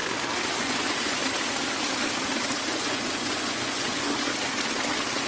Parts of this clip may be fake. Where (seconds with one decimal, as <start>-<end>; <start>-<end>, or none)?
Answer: 0.6-1.2; 2.7-4.3